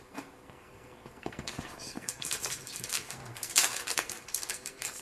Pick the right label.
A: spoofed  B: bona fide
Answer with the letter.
A